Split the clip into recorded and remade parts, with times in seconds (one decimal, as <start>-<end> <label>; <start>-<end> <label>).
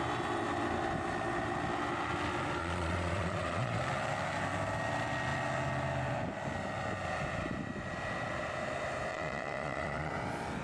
0.0-2.6 recorded; 2.6-3.8 remade; 3.8-9.1 recorded; 9.1-10.1 remade; 10.1-10.6 recorded